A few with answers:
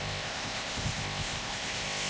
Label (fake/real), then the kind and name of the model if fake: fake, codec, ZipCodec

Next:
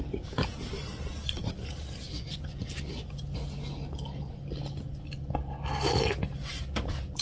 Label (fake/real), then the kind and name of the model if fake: real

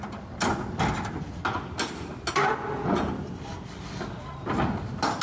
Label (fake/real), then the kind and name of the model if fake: real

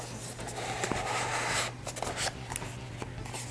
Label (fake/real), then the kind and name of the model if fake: real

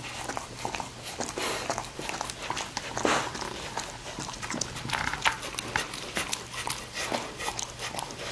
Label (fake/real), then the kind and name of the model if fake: real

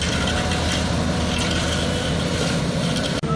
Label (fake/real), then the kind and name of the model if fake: real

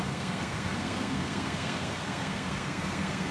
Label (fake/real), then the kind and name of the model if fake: fake, codec, SNAC